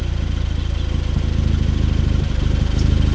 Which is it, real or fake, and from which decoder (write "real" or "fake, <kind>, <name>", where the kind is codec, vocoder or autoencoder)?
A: real